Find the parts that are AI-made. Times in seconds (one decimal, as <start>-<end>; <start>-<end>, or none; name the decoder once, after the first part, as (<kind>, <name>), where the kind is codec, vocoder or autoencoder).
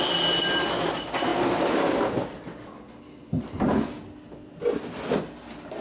none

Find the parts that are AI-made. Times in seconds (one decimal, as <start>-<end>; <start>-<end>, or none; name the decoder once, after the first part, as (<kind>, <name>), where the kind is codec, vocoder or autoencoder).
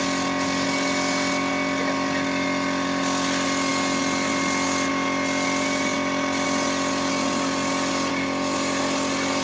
none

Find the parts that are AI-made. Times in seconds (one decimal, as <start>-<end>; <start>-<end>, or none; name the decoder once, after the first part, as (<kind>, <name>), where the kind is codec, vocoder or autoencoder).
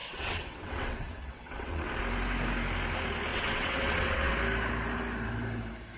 0.0-2.0 (vocoder, WaveNeXt); 3.3-4.3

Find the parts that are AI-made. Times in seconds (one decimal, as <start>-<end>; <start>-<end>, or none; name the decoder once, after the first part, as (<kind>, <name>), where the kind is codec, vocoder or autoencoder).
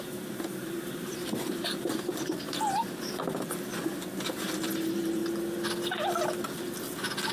0.0-3.7 (vocoder, BigVGAN v2); 4.3-5.2